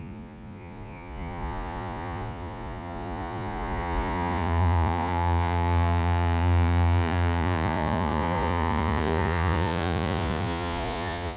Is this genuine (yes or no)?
no